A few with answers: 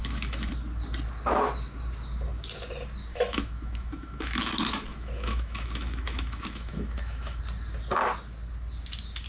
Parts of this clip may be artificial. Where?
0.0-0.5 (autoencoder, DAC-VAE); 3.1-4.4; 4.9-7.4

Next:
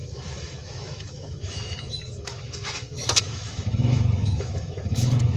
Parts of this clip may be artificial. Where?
0.0-5.4 (autoencoder, DAC-VAE)

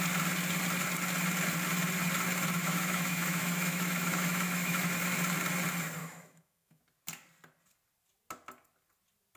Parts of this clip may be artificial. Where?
2.6-4.9 (autoencoder, DAC-VAE); 6.0-6.8

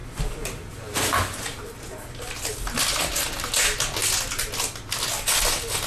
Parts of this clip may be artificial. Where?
none

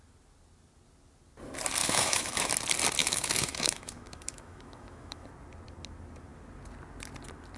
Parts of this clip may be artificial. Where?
1.8-2.5 (autoencoder, DAC-VAE); 3.0-5.3

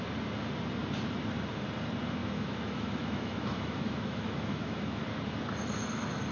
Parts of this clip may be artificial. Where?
2.2-5.0 (autoencoder, DAC-VAE)

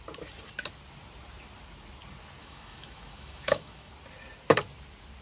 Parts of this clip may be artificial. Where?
2.4-3.9 (autoencoder, DAC-VAE)

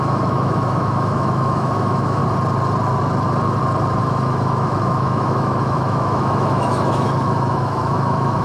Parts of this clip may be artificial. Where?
0.0-2.2 (autoencoder, DAC-VAE); 4.0-8.4